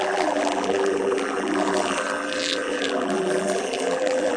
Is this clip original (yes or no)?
no